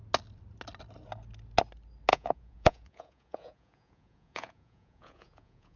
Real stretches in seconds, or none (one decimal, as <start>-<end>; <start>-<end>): 0.0-2.1